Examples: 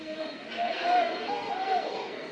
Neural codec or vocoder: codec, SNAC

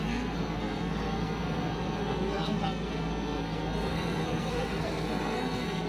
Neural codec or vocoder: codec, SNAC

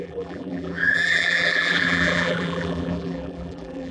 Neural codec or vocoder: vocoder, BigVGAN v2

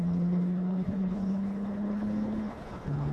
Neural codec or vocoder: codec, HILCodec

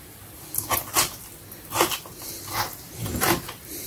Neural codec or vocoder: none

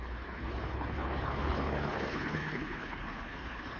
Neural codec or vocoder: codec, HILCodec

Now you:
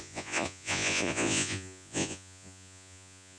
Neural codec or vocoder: vocoder, Vocos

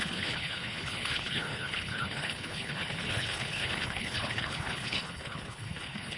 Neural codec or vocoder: codec, HILCodec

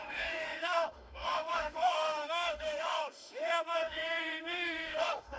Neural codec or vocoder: autoencoder, DAC-VAE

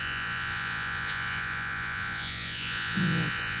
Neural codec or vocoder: vocoder, Vocos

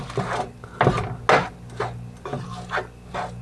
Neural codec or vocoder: none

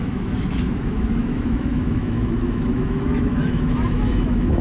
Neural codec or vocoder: autoencoder, DAC-VAE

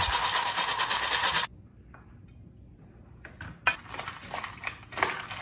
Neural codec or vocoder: none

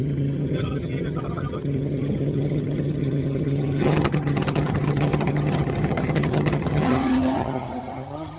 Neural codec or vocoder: vocoder, HiFi-GAN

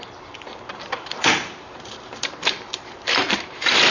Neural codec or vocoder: vocoder, BigVGAN v2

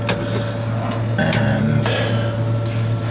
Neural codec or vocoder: none